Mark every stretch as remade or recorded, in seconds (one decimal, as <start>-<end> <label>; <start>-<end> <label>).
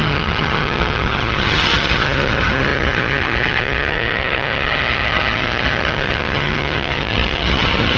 0.0-8.0 remade